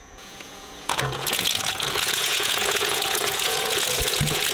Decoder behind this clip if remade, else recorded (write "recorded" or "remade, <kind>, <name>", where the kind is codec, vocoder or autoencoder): remade, vocoder, Vocos